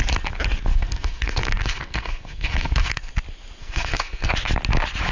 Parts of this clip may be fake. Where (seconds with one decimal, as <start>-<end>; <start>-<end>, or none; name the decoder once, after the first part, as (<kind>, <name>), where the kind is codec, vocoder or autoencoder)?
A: 0.7-3.1 (codec, SNAC); 3.6-4.3